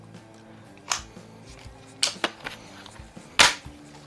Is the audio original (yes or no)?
yes